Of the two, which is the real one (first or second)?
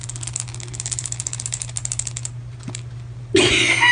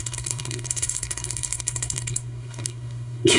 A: first